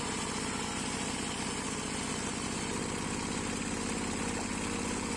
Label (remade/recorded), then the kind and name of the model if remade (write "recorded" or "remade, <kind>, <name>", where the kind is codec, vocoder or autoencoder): recorded